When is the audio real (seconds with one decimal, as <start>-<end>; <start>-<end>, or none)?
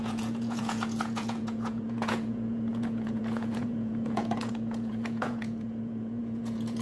none